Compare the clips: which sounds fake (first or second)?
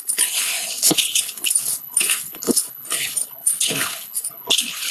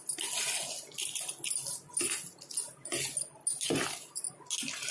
first